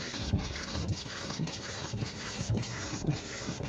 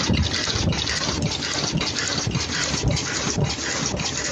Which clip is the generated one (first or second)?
first